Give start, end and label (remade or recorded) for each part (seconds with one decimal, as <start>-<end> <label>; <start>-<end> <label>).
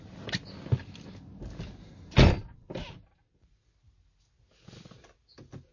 0.0-5.7 recorded